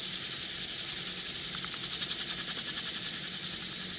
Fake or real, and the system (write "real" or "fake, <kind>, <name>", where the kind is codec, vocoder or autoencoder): real